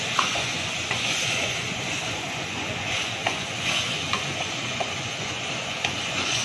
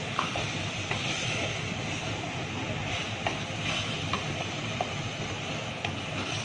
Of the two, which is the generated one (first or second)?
first